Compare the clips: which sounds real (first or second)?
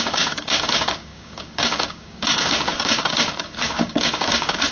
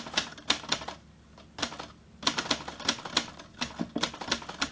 second